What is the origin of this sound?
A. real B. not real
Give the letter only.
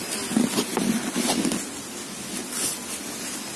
A